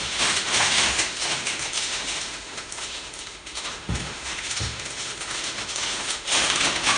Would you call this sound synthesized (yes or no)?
yes